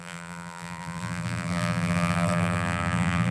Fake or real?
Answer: fake